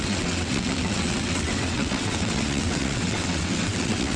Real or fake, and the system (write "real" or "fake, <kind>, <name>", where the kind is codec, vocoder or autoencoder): fake, vocoder, WaveNeXt